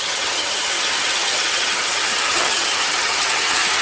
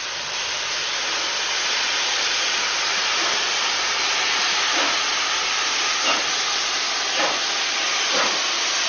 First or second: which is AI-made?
first